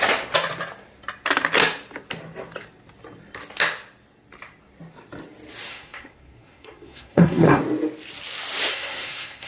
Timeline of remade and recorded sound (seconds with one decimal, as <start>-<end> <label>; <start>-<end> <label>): 0.0-5.7 recorded; 5.7-7.6 remade; 7.6-8.7 recorded; 8.7-9.5 remade